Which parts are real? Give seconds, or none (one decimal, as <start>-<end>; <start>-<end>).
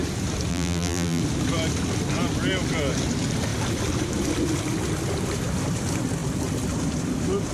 0.0-0.5; 1.2-7.5